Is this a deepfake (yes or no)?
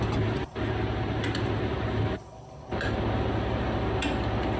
no